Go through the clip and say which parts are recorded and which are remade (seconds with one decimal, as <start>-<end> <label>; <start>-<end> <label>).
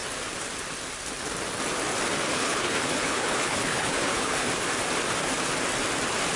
0.0-2.3 recorded; 2.3-4.5 remade; 4.5-6.4 recorded